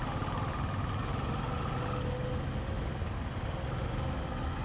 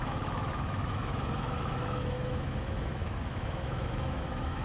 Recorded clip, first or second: first